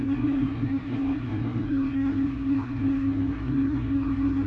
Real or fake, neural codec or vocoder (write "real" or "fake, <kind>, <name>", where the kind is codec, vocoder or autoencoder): fake, codec, SNAC